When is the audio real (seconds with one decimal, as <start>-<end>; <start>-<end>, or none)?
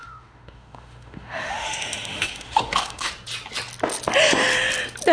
3.1-5.1